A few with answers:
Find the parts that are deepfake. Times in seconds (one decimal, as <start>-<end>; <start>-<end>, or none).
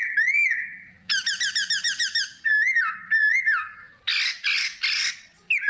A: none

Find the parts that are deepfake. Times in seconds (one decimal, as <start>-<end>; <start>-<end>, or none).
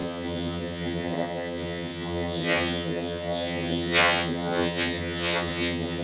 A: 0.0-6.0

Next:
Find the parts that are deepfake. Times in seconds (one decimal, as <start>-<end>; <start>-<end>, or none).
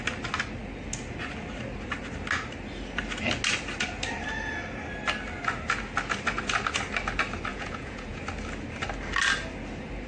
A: 7.5-8.2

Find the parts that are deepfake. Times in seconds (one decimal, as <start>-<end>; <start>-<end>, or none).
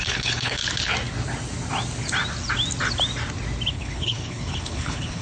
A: 0.0-0.6; 3.7-5.2